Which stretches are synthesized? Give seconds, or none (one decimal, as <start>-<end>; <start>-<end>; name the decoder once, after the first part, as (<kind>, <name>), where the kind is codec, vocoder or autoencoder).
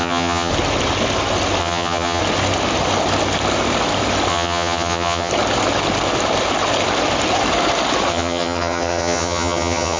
0.0-0.5 (vocoder, HiFi-GAN); 1.6-2.2; 4.3-5.3; 8.1-10.0